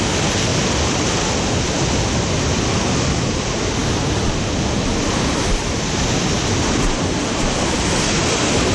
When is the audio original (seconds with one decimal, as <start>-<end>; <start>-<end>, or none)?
0.0-8.7